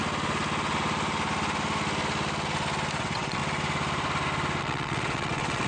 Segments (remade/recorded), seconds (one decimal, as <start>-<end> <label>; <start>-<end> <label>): 0.0-3.0 recorded; 3.0-3.4 remade; 3.4-4.6 recorded; 4.6-5.7 remade